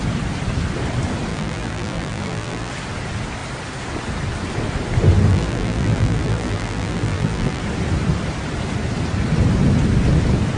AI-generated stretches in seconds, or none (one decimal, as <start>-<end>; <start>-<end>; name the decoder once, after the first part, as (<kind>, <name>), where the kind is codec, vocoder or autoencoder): 1.3-2.7 (vocoder, BigVGAN v2); 5.3-7.6